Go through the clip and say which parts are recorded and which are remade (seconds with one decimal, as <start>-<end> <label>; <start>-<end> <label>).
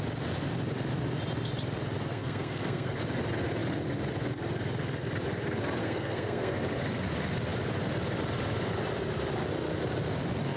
0.0-2.1 recorded; 2.1-2.9 remade; 2.9-5.8 recorded; 5.8-6.6 remade; 6.6-10.6 recorded